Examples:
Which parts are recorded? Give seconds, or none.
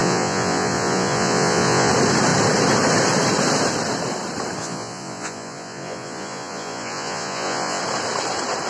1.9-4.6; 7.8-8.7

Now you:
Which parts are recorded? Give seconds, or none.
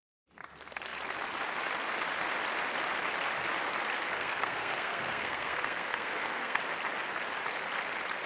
0.0-4.0; 6.6-8.3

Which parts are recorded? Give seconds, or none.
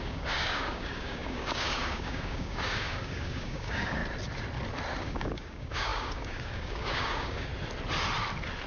4.0-5.0; 7.5-8.7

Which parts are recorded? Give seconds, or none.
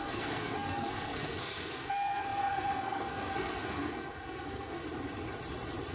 4.8-5.9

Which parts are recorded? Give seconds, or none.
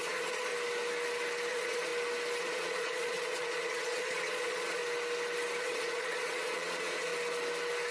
0.5-1.5; 1.9-2.4; 4.8-5.6; 7.1-7.9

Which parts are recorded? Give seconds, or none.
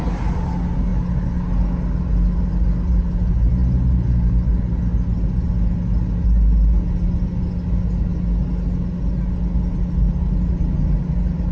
0.0-11.5